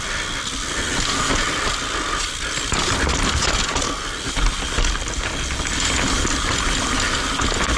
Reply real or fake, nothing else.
real